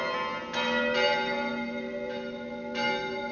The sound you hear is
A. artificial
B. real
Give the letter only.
B